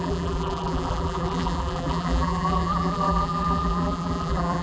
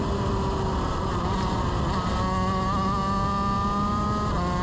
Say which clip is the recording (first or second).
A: second